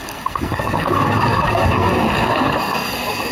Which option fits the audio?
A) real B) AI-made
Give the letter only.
B